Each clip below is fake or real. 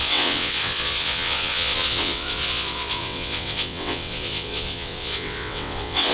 fake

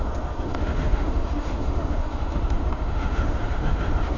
fake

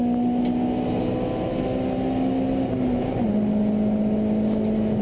real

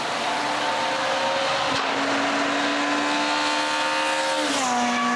real